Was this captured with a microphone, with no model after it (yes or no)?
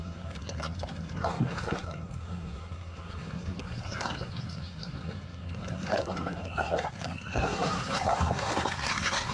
no